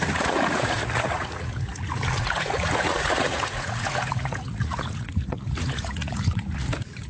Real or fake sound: fake